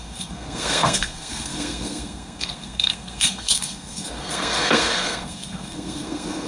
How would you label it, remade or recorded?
remade